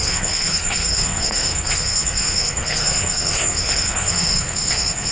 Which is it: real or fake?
fake